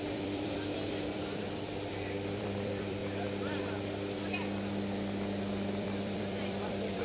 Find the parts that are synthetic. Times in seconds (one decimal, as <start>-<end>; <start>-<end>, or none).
0.0-3.0; 5.5-7.0